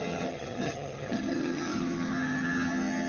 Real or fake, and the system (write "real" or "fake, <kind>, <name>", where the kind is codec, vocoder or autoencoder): fake, vocoder, HiFi-GAN